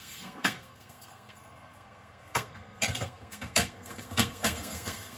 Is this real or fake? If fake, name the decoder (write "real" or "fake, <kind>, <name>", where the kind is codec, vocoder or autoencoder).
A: fake, codec, SNAC